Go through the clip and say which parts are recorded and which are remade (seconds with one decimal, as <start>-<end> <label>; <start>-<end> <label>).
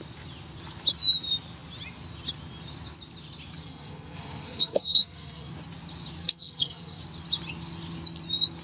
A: 0.0-3.6 recorded; 3.6-5.5 remade; 5.5-6.2 recorded; 6.2-7.0 remade; 7.0-8.6 recorded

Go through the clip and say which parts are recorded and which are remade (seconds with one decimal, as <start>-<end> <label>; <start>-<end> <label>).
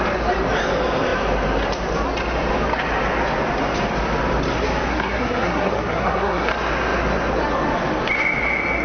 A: 0.0-4.9 recorded; 4.9-6.5 remade; 6.5-8.8 recorded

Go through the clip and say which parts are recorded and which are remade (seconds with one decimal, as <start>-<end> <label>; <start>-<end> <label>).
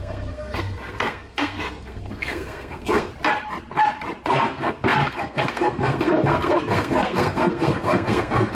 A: 0.0-3.1 remade; 3.1-4.3 recorded; 4.3-8.5 remade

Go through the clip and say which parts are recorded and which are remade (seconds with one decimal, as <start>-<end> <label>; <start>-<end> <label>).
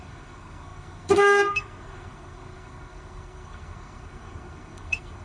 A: 0.0-5.2 remade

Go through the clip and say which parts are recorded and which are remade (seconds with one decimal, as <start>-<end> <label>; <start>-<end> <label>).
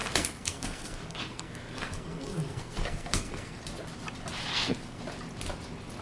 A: 0.0-3.6 remade; 3.6-4.5 recorded; 4.5-5.0 remade; 5.0-6.0 recorded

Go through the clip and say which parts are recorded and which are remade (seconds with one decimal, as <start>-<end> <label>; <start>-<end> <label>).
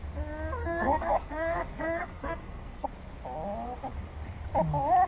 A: 0.0-0.6 recorded; 0.6-2.9 remade; 2.9-5.1 recorded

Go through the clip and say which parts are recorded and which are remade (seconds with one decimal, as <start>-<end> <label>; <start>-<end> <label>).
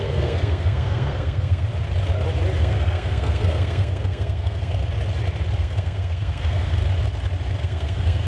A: 0.0-1.7 remade; 1.7-2.6 recorded; 2.6-4.7 remade; 4.7-5.6 recorded; 5.6-6.8 remade; 6.8-7.6 recorded; 7.6-8.3 remade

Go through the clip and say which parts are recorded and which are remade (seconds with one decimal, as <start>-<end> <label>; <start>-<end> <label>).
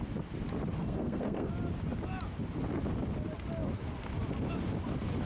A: 0.0-0.8 recorded; 0.8-1.5 remade; 1.5-5.3 recorded